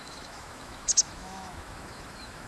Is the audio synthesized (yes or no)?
yes